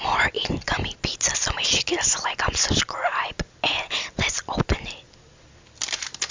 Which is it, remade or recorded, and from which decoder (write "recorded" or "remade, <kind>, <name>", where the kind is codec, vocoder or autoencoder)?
recorded